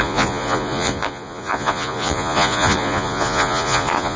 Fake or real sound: fake